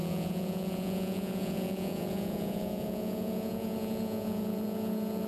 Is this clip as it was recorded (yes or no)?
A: no